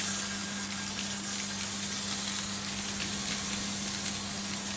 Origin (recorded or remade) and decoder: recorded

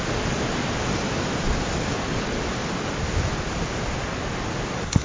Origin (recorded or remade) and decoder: recorded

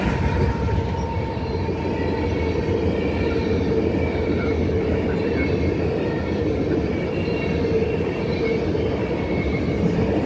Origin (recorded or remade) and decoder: recorded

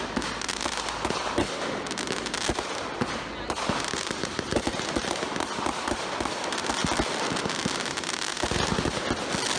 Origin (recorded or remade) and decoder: recorded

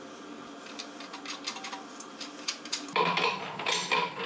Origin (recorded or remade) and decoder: recorded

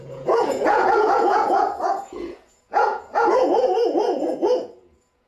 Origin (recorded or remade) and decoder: remade, vocoder, Vocos